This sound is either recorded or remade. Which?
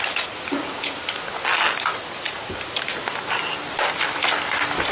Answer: recorded